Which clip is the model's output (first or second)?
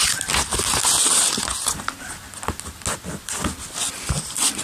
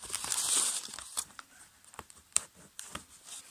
second